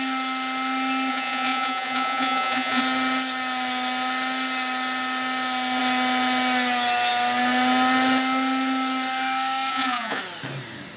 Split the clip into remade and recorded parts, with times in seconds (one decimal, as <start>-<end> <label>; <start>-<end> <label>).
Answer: 0.0-1.1 recorded; 1.1-2.8 remade; 2.8-9.7 recorded; 9.7-10.2 remade; 10.2-11.0 recorded